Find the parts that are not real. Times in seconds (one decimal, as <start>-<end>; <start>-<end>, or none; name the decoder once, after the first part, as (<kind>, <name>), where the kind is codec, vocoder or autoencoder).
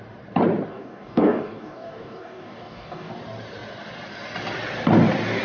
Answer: 0.7-3.1 (codec, DAC)